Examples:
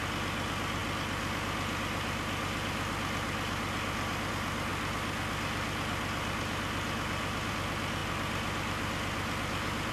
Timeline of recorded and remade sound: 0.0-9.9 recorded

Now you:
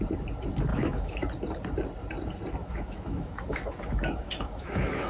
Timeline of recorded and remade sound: 0.0-0.7 recorded; 0.7-1.3 remade; 1.3-2.6 recorded; 2.6-5.1 remade

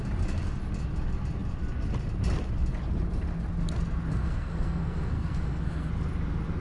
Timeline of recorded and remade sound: 0.0-4.1 recorded; 4.1-5.9 remade; 5.9-6.6 recorded

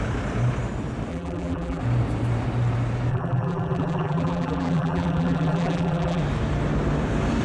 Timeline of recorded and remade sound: 0.0-1.1 recorded; 1.1-1.8 remade; 1.8-3.1 recorded; 3.1-6.2 remade; 6.2-7.4 recorded